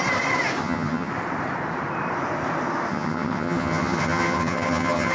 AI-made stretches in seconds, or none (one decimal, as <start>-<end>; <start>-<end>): 0.6-1.1; 2.9-5.1